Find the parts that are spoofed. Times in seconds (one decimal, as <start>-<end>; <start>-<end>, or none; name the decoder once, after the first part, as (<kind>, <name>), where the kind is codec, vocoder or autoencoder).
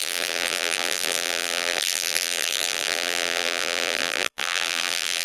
0.0-5.2 (vocoder, BigVGAN v2)